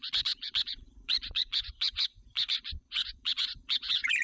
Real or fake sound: fake